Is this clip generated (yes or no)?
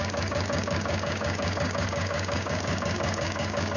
yes